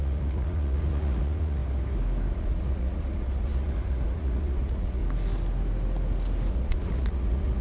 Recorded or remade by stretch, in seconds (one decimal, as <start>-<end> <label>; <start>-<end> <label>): 0.0-1.6 remade; 1.6-2.3 recorded; 2.3-5.0 remade; 5.0-6.5 recorded; 6.5-7.6 remade